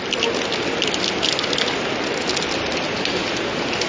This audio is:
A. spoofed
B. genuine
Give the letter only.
B